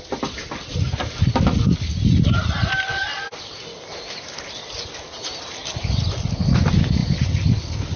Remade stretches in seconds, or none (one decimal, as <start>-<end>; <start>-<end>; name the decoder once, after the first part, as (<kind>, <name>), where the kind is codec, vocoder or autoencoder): none